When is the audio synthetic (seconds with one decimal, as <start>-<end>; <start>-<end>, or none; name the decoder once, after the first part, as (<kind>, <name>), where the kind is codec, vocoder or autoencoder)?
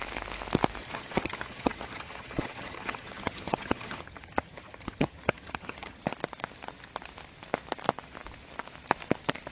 0.8-6.0 (vocoder, HiFi-GAN)